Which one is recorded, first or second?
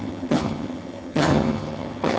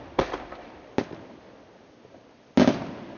second